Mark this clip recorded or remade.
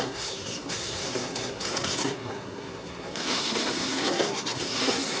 remade